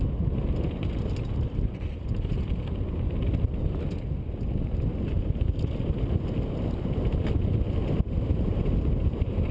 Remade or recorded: recorded